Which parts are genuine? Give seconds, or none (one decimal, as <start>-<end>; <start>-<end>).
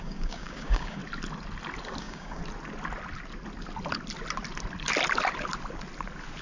1.0-2.0; 2.4-6.4